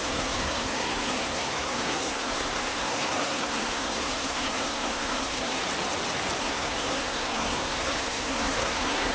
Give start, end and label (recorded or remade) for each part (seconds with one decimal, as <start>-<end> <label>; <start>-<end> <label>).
0.0-5.6 remade; 5.6-6.4 recorded; 6.4-9.1 remade